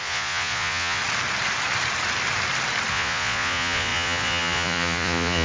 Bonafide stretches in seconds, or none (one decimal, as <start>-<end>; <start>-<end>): 1.0-2.9